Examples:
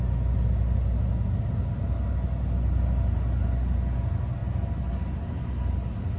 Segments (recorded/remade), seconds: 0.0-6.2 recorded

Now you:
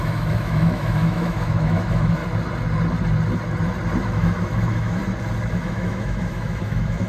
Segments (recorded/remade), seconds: 0.0-2.2 remade; 2.2-4.0 recorded; 4.0-5.0 remade; 5.0-5.5 recorded; 5.5-7.1 remade

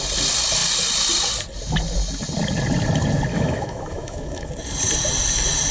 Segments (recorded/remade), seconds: 0.0-3.3 recorded; 3.3-4.5 remade; 4.5-5.7 recorded

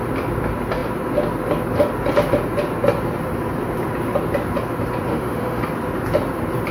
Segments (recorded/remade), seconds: 0.0-5.1 recorded; 5.1-5.6 remade; 5.6-6.7 recorded

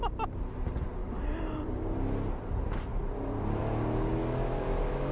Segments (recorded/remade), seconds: 0.0-4.2 recorded; 4.2-5.1 remade

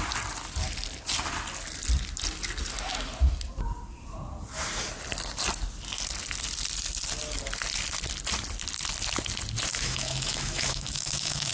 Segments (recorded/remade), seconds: 0.0-9.7 recorded; 9.7-11.5 remade

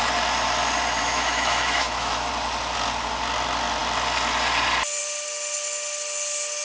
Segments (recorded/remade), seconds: 0.0-1.0 recorded; 1.0-2.3 remade; 2.3-6.6 recorded

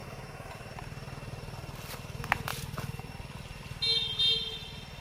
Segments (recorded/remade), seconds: 0.0-0.5 remade; 0.5-5.0 recorded